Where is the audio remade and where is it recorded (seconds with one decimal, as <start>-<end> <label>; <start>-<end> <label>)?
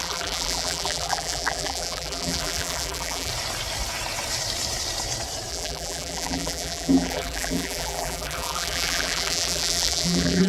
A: 0.0-3.3 remade; 3.3-5.5 recorded; 5.5-10.5 remade